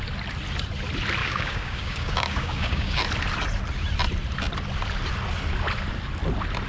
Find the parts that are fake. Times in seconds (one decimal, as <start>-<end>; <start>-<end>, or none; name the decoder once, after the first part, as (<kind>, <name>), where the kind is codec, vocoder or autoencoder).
1.2-3.0 (codec, DAC)

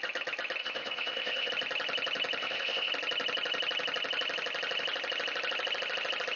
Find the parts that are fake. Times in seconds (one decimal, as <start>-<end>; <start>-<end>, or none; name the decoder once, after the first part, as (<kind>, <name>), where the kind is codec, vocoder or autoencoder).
0.6-1.5 (codec, ZipCodec); 2.4-2.9